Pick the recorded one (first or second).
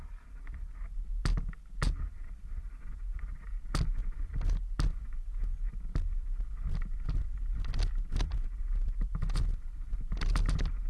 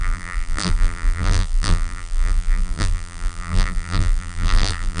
first